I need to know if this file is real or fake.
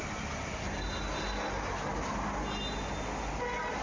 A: real